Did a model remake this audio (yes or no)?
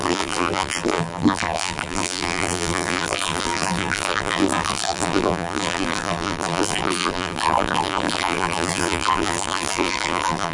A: yes